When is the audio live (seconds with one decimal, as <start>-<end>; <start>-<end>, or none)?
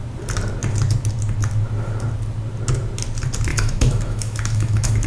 0.0-3.5